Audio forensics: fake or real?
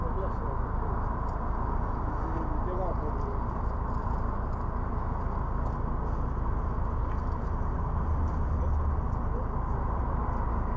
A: real